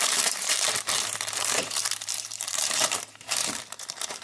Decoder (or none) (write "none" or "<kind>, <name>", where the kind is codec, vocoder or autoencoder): vocoder, BigVGAN v2